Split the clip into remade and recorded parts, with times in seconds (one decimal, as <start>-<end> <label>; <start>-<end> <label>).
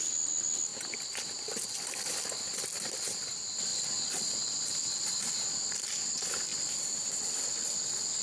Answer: 0.0-3.7 recorded; 3.7-5.9 remade; 5.9-6.5 recorded; 6.5-7.2 remade; 7.2-8.2 recorded